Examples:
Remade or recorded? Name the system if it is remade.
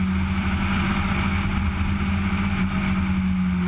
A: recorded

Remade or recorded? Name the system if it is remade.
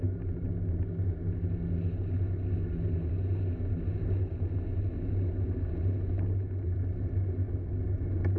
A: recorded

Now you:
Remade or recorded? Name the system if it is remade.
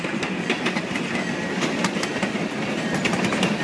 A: recorded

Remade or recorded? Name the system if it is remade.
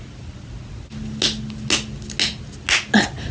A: recorded